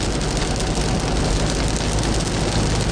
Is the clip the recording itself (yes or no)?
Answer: yes